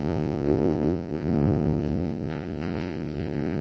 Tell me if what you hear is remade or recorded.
remade